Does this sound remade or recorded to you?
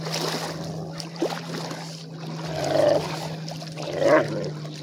recorded